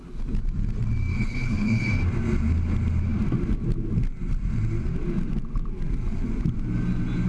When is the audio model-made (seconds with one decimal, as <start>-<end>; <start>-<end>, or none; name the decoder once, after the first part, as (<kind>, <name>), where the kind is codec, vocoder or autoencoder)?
1.1-1.9 (codec, HILCodec)